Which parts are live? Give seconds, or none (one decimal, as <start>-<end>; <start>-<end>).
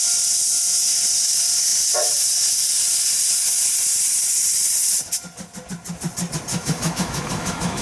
0.0-6.5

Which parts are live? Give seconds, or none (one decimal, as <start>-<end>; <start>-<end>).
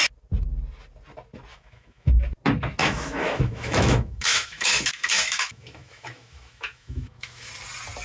0.0-1.5; 2.1-2.8; 7.5-8.0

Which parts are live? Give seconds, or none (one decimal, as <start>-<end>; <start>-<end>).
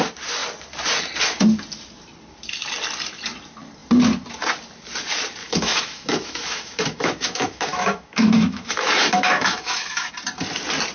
0.0-5.4; 10.1-10.9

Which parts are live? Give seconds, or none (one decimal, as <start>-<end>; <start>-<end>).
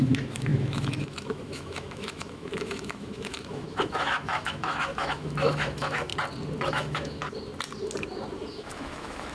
6.1-6.7; 7.2-8.5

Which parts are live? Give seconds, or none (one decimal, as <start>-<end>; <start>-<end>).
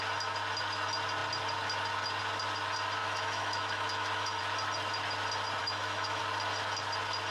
0.0-3.0; 4.4-5.6; 6.2-7.3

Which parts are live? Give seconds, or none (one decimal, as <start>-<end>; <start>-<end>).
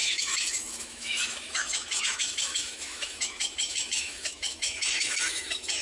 none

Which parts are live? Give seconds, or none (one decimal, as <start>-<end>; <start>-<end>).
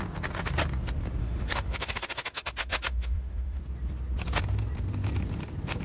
0.0-1.2; 3.6-5.8